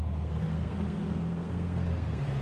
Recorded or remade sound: remade